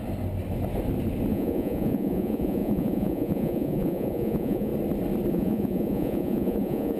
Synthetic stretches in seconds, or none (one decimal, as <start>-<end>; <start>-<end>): 1.3-4.7; 5.3-7.0